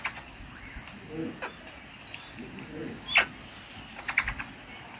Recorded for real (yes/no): yes